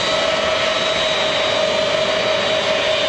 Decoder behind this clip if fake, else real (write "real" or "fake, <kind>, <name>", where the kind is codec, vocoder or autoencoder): real